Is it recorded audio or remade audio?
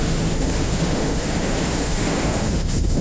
remade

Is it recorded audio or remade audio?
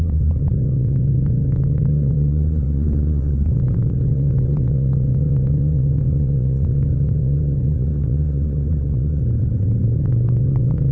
remade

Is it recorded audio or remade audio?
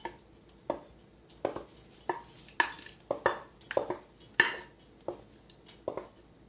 recorded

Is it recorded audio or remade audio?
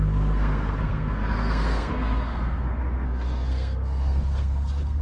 remade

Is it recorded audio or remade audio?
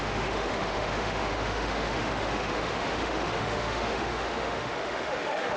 remade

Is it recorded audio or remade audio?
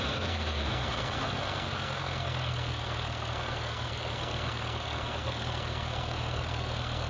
remade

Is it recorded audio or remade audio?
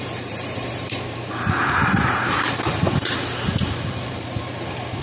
remade